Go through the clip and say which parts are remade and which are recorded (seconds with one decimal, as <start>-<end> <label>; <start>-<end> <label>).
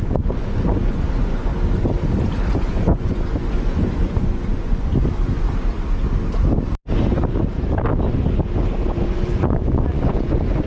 0.0-1.5 remade; 1.5-2.6 recorded; 2.6-4.9 remade; 4.9-8.8 recorded; 8.8-10.7 remade